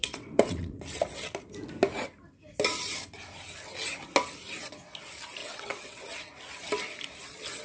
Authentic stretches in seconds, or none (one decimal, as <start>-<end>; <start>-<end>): 0.8-5.4; 6.0-7.6